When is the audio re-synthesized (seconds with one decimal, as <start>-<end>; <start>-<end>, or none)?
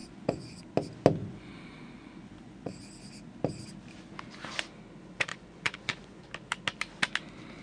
0.0-0.6; 1.2-2.7; 5.3-6.3